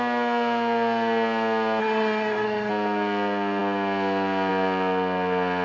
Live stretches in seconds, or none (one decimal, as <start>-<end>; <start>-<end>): 0.0-1.8; 2.7-5.6